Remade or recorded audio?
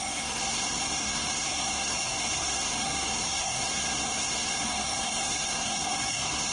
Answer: remade